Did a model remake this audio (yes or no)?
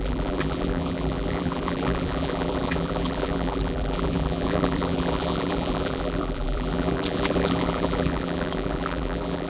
yes